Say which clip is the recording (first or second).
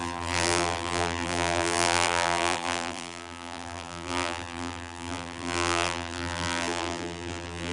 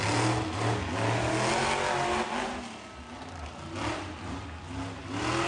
second